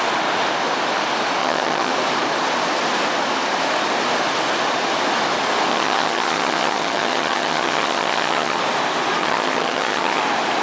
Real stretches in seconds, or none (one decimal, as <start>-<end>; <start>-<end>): 0.0-1.4; 1.9-5.7; 8.6-9.2; 10.2-10.6